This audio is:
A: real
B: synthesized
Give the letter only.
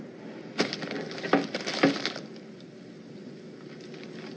A